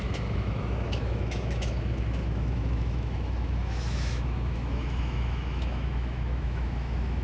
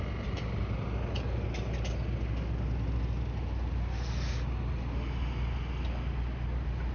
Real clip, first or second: second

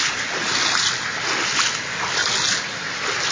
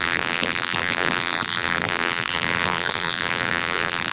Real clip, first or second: first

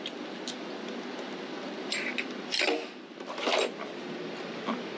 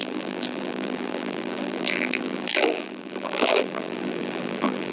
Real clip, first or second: first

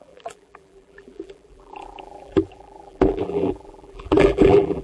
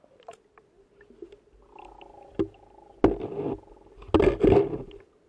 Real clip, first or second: second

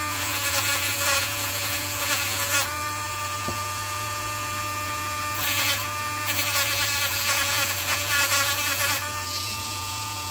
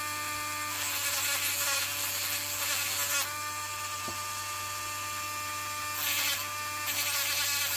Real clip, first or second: second